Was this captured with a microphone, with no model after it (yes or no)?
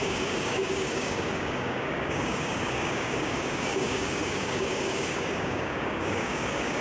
no